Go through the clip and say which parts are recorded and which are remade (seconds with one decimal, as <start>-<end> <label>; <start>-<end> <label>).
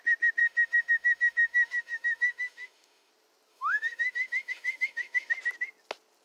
0.0-0.4 recorded; 0.4-3.1 remade; 3.1-3.5 recorded; 3.5-5.3 remade; 5.3-6.2 recorded